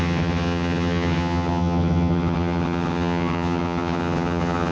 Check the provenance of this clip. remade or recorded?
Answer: remade